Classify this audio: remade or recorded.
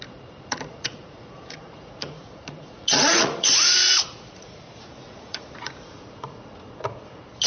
remade